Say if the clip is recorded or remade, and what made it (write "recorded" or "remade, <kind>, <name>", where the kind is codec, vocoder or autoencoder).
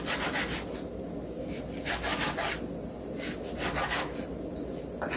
recorded